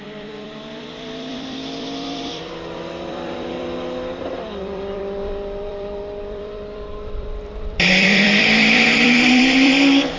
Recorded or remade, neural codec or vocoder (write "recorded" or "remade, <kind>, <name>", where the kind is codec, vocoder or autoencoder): remade, vocoder, BigVGAN v2